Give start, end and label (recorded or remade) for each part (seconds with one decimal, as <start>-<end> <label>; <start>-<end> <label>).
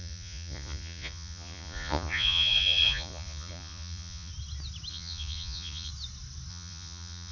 0.0-4.3 remade; 4.3-4.9 recorded; 4.9-5.9 remade; 5.9-6.5 recorded; 6.5-7.3 remade